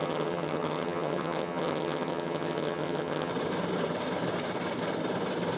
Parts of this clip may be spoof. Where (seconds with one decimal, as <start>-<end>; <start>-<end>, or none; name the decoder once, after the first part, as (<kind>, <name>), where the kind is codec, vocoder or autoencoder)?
0.0-3.3 (vocoder, HiFi-GAN)